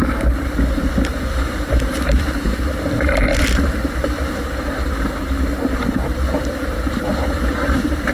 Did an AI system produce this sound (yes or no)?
yes